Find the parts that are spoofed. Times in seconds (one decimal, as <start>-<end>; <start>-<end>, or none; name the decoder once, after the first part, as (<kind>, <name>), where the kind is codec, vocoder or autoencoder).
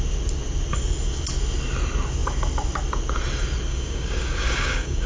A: 3.7-5.1 (codec, DAC)